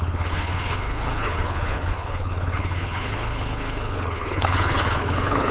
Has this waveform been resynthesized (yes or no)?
yes